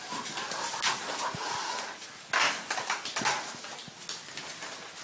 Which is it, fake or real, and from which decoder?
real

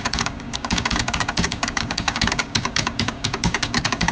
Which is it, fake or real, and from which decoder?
fake, codec, DAC